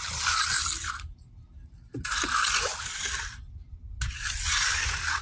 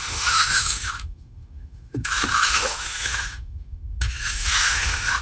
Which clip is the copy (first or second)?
second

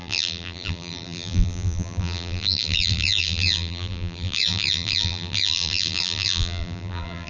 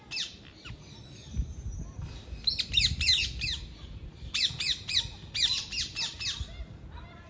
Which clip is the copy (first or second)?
first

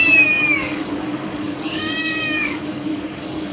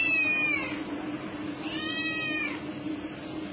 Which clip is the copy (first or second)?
first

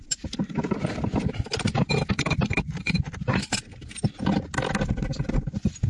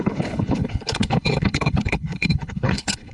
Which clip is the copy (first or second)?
second